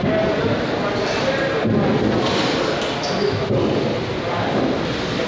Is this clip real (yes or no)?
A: yes